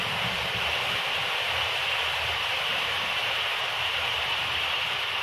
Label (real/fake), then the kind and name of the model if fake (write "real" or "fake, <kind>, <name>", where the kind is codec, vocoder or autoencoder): fake, vocoder, BigVGAN v2